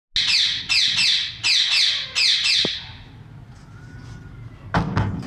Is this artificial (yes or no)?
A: no